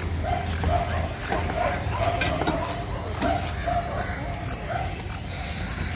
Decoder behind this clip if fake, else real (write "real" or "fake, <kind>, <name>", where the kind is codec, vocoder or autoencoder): real